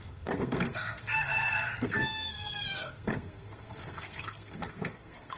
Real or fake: fake